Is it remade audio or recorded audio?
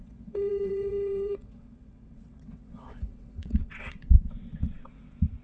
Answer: remade